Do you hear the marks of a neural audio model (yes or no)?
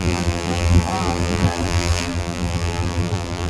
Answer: yes